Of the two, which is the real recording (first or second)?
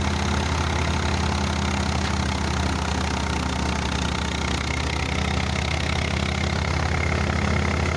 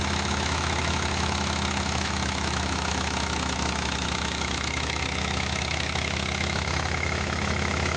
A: first